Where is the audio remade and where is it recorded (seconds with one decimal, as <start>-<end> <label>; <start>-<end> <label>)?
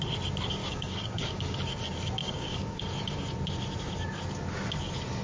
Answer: 0.0-0.6 recorded; 0.6-1.7 remade; 1.7-2.2 recorded; 2.2-2.8 remade; 2.8-5.2 recorded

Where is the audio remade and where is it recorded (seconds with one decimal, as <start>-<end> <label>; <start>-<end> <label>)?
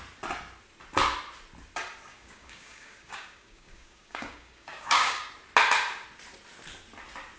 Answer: 0.0-2.1 recorded; 2.1-5.3 remade; 5.3-7.4 recorded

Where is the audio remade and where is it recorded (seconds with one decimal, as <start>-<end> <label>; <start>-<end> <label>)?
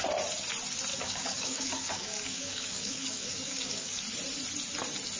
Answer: 0.0-0.9 recorded; 0.9-4.0 remade; 4.0-5.2 recorded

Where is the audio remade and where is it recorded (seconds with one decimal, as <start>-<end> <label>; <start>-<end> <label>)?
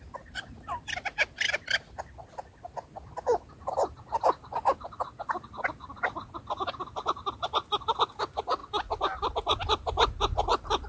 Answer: 0.0-10.9 recorded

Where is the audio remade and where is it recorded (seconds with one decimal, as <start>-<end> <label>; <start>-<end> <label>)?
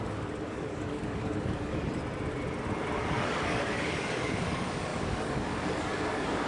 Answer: 0.0-2.0 remade; 2.0-3.1 recorded; 3.1-6.5 remade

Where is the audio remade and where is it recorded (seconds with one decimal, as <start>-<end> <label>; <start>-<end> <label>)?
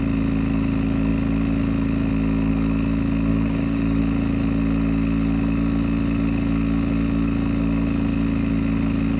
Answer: 0.0-3.3 recorded; 3.3-4.0 remade; 4.0-9.2 recorded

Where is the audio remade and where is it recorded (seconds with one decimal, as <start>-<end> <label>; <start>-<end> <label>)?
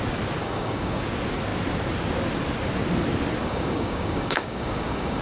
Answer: 0.0-0.4 recorded; 0.4-1.0 remade; 1.0-3.4 recorded; 3.4-5.2 remade